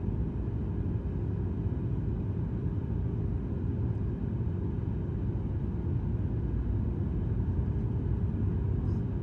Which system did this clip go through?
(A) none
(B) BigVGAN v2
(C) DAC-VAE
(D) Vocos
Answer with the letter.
A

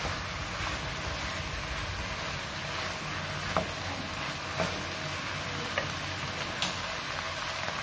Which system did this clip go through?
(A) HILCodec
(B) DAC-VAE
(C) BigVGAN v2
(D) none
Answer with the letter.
D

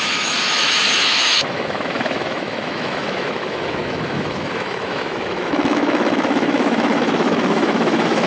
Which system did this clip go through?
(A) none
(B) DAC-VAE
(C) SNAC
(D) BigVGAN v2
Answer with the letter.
B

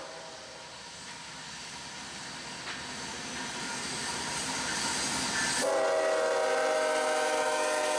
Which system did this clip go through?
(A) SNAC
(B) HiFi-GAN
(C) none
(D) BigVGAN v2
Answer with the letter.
C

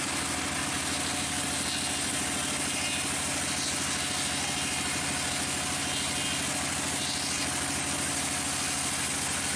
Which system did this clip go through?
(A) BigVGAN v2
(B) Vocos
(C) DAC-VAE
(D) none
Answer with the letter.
D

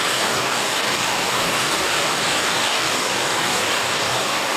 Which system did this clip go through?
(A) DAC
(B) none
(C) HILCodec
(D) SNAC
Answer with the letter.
A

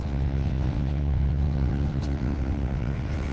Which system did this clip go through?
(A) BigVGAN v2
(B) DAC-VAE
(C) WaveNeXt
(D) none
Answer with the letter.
C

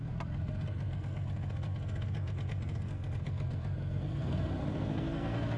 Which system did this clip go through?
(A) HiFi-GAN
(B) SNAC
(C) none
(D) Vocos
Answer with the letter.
B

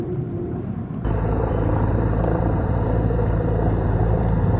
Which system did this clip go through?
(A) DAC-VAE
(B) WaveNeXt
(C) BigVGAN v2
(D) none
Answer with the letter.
C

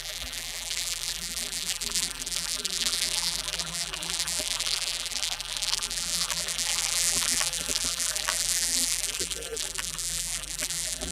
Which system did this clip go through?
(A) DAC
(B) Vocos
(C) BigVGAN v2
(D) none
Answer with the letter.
C